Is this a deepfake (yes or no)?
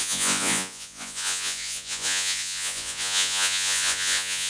yes